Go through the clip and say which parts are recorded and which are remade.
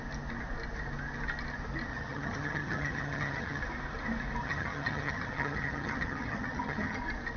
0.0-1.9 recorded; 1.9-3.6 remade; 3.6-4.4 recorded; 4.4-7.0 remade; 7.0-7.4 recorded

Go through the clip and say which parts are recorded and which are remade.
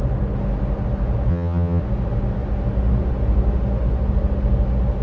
0.0-1.3 recorded; 1.3-1.8 remade; 1.8-5.0 recorded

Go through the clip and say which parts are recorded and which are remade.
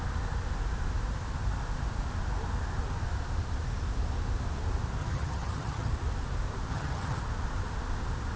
0.0-5.0 recorded; 5.0-5.9 remade; 5.9-6.7 recorded; 6.7-7.2 remade; 7.2-8.4 recorded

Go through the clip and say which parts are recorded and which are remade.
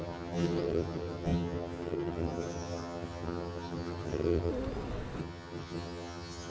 0.0-4.5 remade; 4.5-5.2 recorded; 5.2-6.5 remade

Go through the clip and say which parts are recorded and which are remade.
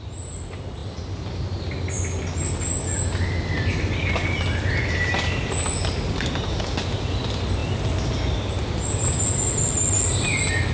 0.0-10.7 recorded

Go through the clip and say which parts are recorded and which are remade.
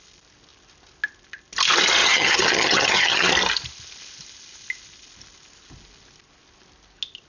0.0-2.0 recorded; 2.0-3.3 remade; 3.3-7.3 recorded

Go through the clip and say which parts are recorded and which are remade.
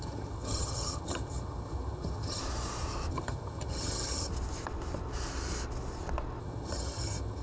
0.0-2.4 remade; 2.4-3.1 recorded; 3.1-4.3 remade; 4.3-6.4 recorded; 6.4-7.4 remade